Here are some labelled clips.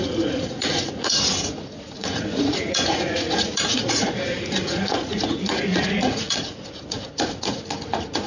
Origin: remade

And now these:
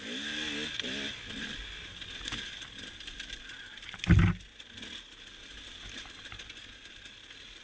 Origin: recorded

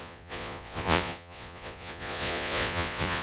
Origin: remade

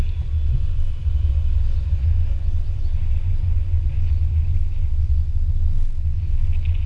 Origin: recorded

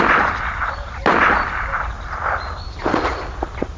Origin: recorded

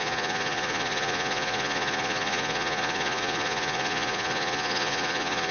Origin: remade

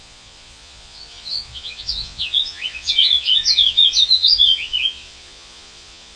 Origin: remade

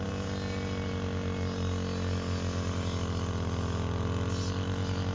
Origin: recorded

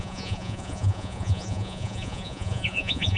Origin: remade